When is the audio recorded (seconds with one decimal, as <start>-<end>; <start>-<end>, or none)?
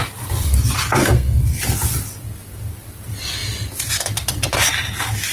0.0-1.0; 1.6-5.3